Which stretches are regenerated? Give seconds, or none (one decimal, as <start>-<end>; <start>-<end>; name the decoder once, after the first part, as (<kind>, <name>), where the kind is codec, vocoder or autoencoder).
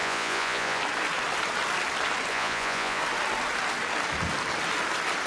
0.0-0.8 (vocoder, Vocos); 2.3-3.0